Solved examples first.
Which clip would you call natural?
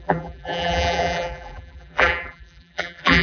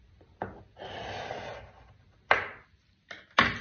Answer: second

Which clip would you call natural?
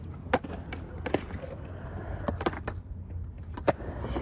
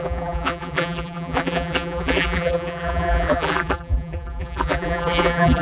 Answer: first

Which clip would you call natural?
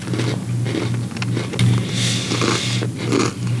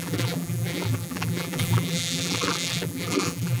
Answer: first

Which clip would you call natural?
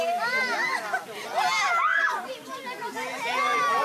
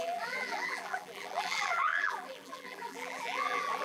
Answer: first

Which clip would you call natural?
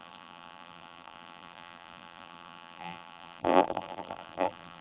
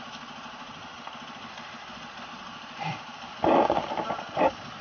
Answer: second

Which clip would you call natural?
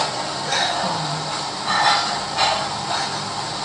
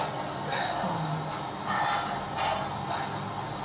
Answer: second